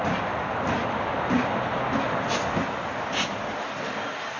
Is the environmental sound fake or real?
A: real